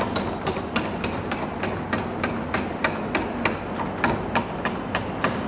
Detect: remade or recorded recorded